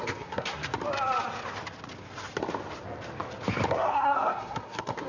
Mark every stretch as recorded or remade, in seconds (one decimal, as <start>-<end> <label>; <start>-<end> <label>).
0.0-0.6 remade; 0.6-3.7 recorded; 3.7-5.1 remade